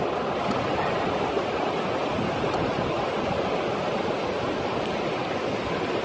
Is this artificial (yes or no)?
no